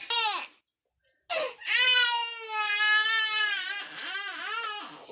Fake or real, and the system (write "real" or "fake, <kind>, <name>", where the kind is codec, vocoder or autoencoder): real